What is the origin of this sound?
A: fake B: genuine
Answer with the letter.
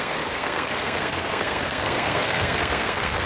A